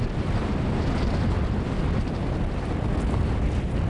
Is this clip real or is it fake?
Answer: real